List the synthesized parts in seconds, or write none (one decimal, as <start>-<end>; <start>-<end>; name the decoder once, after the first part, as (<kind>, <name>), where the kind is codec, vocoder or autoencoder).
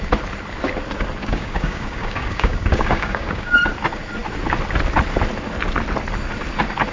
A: 1.2-3.6 (codec, DAC)